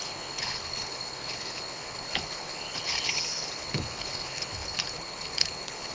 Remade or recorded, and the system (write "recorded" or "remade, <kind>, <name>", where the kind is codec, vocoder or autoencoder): remade, codec, HILCodec